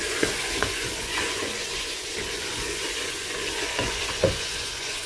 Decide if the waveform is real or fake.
fake